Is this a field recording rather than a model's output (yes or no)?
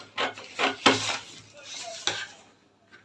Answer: yes